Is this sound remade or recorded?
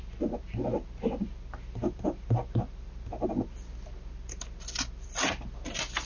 recorded